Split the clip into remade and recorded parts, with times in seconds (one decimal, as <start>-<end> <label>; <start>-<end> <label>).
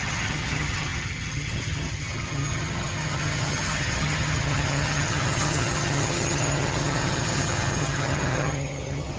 0.0-9.2 remade